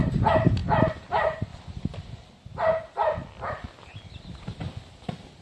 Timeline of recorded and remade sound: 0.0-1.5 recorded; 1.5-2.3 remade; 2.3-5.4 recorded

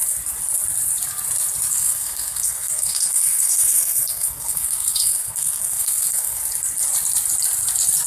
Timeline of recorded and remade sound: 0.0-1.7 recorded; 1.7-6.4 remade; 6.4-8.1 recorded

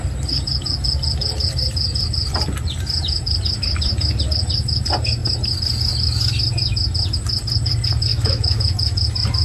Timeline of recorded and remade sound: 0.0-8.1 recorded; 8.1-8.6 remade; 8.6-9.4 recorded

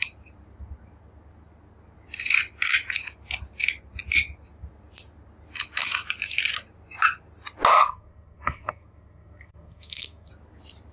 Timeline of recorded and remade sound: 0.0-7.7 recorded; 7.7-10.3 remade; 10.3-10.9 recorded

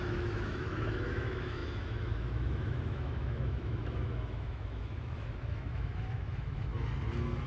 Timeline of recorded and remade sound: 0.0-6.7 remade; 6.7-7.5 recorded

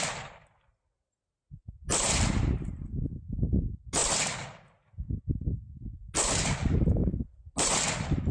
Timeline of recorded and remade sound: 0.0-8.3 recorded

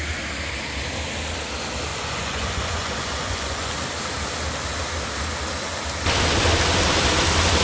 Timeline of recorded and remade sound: 0.0-1.9 recorded; 1.9-3.7 remade; 3.7-7.6 recorded

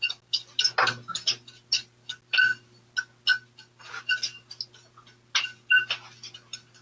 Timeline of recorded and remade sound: 0.0-6.8 recorded